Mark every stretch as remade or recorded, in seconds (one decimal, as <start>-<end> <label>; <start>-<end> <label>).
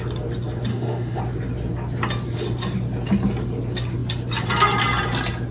0.0-0.7 recorded; 0.7-1.2 remade; 1.2-5.5 recorded